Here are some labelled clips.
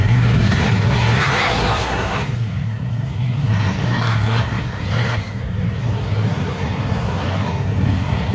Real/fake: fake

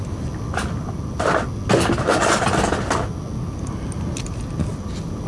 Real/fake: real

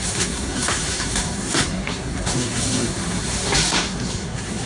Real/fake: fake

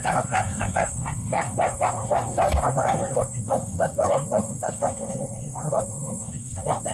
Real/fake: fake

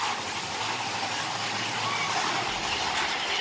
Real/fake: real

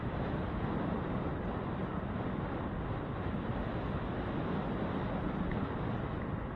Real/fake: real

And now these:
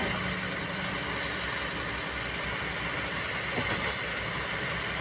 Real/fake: real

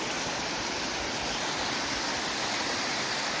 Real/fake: real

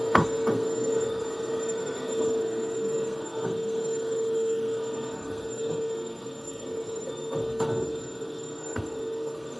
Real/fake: fake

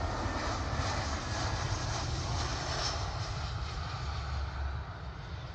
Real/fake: real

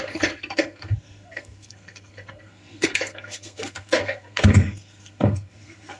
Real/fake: fake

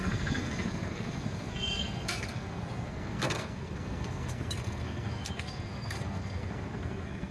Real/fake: fake